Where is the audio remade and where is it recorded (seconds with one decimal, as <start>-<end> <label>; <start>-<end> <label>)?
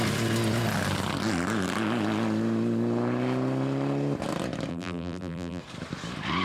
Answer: 0.0-4.7 recorded; 4.7-5.6 remade; 5.6-6.4 recorded